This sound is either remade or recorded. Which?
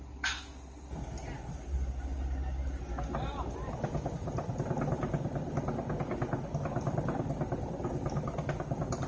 recorded